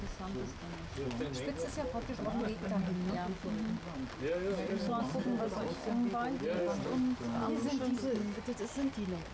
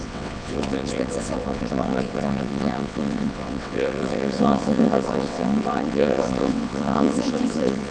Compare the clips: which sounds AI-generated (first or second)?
second